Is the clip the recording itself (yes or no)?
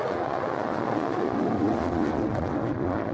no